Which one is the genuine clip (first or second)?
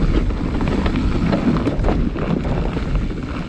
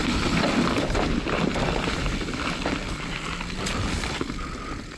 first